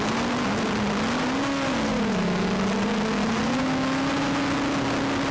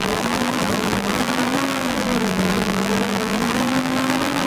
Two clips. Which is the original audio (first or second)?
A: first